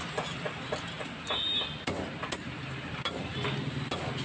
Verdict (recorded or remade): recorded